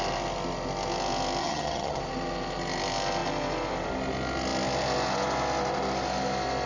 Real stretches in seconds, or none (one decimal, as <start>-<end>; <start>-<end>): 0.0-1.4; 2.0-6.7

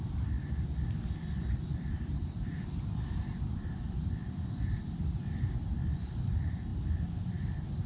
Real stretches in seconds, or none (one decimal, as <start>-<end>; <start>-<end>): 0.0-7.9

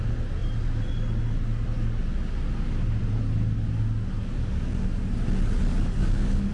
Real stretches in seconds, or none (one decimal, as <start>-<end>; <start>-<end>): 0.0-5.7

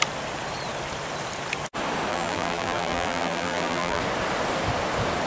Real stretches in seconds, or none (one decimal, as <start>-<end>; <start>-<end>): 0.0-2.1; 4.0-5.3

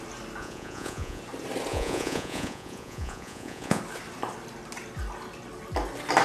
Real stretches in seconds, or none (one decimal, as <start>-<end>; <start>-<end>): 0.0-0.4; 1.2-1.7; 3.8-6.2